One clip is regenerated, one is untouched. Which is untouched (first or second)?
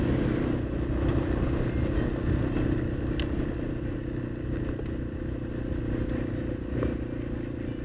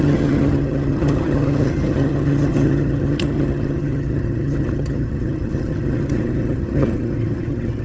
first